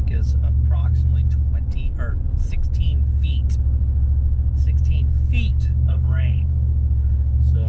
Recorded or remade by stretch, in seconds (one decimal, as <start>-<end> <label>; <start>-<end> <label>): 0.0-0.9 remade; 0.9-5.5 recorded; 5.5-7.7 remade